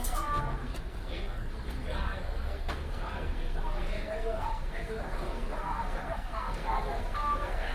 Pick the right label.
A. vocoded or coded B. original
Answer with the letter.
A